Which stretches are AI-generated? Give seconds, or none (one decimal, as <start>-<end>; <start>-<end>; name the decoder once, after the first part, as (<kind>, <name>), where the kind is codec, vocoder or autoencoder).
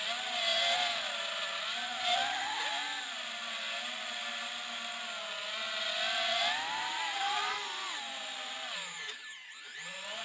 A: none